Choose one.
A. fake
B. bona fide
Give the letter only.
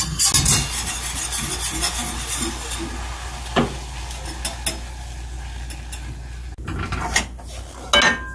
B